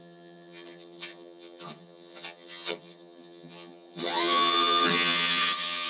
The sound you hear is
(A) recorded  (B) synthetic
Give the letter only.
B